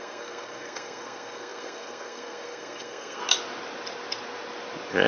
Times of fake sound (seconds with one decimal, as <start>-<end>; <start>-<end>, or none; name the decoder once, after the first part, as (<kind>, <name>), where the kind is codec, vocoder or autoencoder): 0.0-3.2 (codec, SNAC)